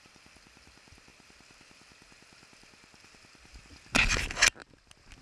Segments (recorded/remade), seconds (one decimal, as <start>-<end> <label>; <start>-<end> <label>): 0.0-5.2 recorded